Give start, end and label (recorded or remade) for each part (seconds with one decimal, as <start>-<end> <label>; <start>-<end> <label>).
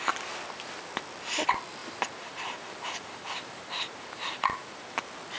0.0-1.8 recorded; 1.8-5.0 remade; 5.0-5.4 recorded